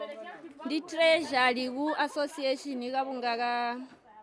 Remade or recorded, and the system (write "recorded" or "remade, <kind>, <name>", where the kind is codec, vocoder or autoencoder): recorded